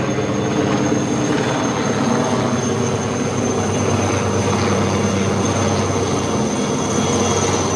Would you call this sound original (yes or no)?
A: yes